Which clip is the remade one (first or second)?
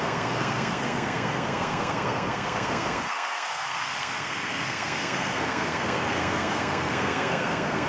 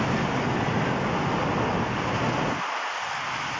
first